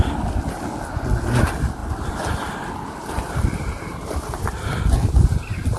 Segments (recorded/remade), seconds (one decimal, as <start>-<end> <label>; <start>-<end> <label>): 0.0-1.8 recorded; 1.8-4.8 remade; 4.8-5.8 recorded